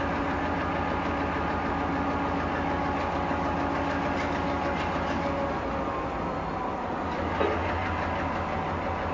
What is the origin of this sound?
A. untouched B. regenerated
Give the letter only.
A